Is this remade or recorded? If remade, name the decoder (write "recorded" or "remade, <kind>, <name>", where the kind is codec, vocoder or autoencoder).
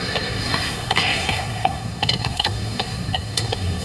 remade, codec, SNAC